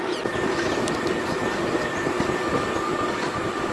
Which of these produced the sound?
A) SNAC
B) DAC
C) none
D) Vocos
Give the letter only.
C